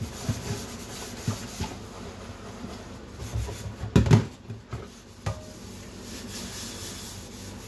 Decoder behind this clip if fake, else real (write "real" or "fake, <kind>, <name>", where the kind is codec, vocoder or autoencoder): real